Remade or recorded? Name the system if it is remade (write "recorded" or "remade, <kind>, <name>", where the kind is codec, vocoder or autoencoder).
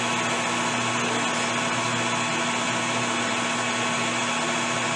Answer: recorded